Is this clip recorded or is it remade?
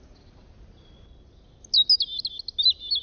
recorded